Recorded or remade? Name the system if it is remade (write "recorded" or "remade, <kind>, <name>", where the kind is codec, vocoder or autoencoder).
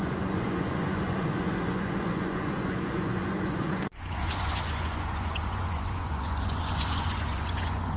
remade, vocoder, Vocos